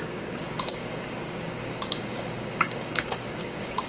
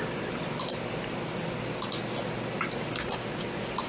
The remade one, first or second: first